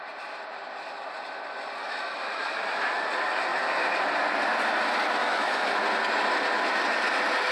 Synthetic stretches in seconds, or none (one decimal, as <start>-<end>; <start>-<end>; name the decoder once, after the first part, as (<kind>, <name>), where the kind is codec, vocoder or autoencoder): 1.8-2.6 (autoencoder, DAC-VAE); 5.2-5.8